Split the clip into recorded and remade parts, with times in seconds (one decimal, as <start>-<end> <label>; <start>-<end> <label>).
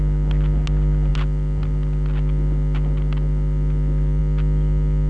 0.0-5.1 recorded